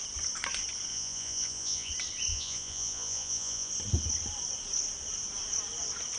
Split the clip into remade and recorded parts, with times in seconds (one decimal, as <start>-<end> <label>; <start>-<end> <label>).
0.0-0.9 recorded; 0.9-1.9 remade; 1.9-2.3 recorded; 2.3-3.7 remade; 3.7-6.2 recorded